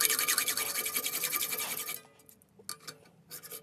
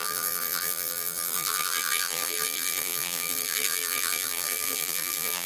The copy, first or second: second